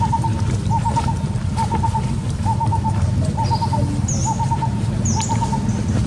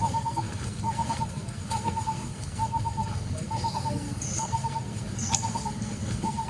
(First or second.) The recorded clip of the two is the first